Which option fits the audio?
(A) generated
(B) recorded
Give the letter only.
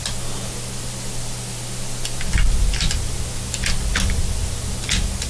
B